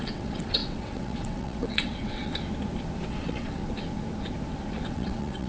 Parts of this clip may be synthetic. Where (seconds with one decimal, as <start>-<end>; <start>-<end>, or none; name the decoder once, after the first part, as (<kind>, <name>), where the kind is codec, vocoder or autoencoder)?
0.0-2.3 (vocoder, WaveNeXt); 3.1-3.6; 4.9-5.5